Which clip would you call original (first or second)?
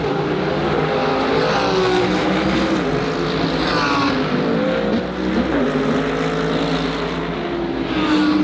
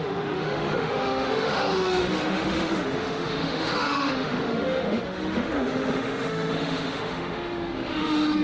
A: first